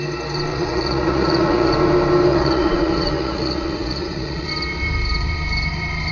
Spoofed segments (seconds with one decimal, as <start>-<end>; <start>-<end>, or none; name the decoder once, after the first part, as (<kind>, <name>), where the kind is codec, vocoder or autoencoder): 0.5-1.7 (vocoder, Vocos); 2.3-4.5